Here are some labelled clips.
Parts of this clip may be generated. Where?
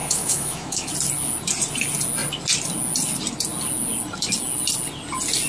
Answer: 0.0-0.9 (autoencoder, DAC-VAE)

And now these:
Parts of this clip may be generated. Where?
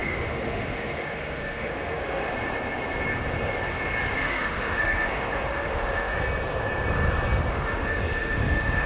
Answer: 0.0-2.3 (autoencoder, DAC-VAE); 4.2-6.1; 7.5-8.9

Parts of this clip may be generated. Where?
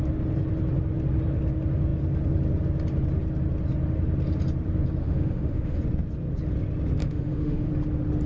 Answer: 5.0-5.8 (autoencoder, DAC-VAE); 7.0-7.7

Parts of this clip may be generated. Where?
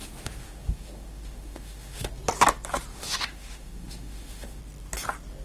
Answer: 0.0-2.1 (autoencoder, DAC-VAE); 2.9-4.6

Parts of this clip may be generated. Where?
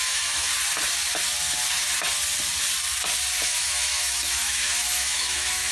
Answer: 0.0-0.5 (autoencoder, DAC-VAE); 3.4-5.7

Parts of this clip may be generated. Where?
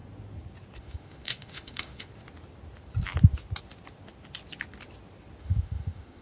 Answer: 0.8-2.1 (autoencoder, DAC-VAE); 5.4-6.2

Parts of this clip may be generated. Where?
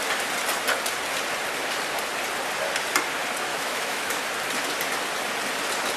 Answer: 3.5-4.2 (autoencoder, DAC-VAE)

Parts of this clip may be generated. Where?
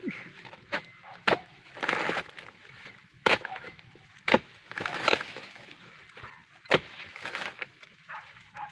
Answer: 0.0-1.7 (autoencoder, DAC-VAE); 2.5-6.0; 7.0-8.7